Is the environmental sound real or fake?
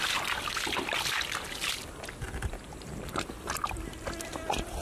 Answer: real